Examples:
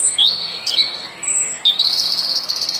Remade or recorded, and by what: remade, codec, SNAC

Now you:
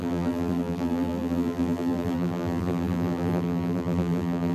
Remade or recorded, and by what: remade, vocoder, BigVGAN v2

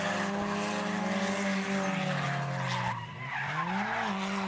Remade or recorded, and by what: recorded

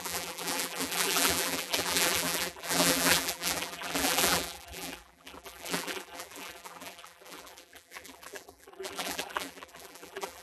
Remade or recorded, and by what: remade, vocoder, BigVGAN v2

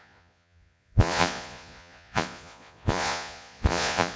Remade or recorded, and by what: remade, vocoder, Vocos